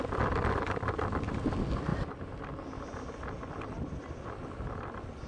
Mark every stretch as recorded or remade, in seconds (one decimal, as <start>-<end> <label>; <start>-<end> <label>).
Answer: 0.0-5.3 recorded

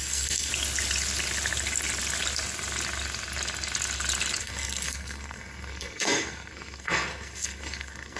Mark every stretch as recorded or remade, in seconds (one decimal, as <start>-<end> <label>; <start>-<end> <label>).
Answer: 0.0-0.5 remade; 0.5-4.4 recorded; 4.4-8.2 remade

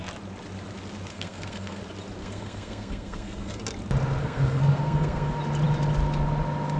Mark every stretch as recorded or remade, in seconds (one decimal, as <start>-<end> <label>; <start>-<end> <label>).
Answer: 0.0-1.1 recorded; 1.1-1.8 remade; 1.8-2.2 recorded; 2.2-3.6 remade; 3.6-4.2 recorded; 4.2-5.4 remade; 5.4-6.8 recorded

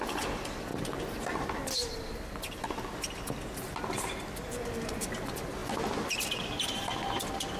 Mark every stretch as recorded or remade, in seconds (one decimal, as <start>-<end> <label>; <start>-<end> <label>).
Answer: 0.0-0.7 remade; 0.7-4.5 recorded; 4.5-5.6 remade; 5.6-6.4 recorded; 6.4-7.6 remade

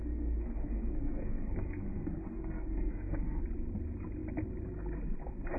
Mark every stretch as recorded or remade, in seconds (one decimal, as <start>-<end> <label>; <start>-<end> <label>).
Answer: 0.0-3.4 remade; 3.4-5.6 recorded

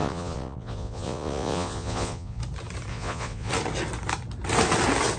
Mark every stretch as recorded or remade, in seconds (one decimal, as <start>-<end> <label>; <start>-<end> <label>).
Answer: 0.0-2.4 remade; 2.4-2.9 recorded; 2.9-3.5 remade; 3.5-5.2 recorded

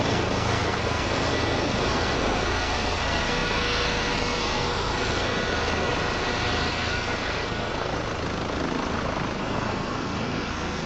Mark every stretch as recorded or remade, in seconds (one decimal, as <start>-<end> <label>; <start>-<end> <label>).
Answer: 0.0-5.9 remade; 5.9-6.7 recorded; 6.7-7.9 remade; 7.9-9.4 recorded; 9.4-10.9 remade

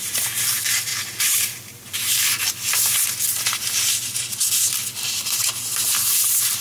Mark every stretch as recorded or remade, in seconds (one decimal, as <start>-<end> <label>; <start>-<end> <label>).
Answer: 0.0-0.9 remade; 0.9-4.9 recorded; 4.9-6.6 remade